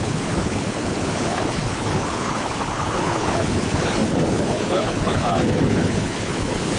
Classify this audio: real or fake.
fake